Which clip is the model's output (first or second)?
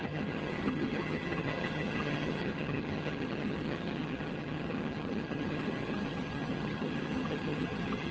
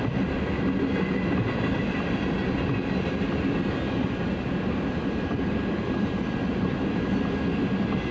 first